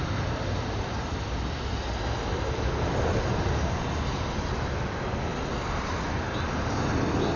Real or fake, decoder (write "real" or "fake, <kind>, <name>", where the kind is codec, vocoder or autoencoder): real